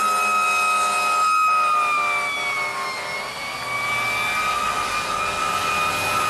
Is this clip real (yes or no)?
yes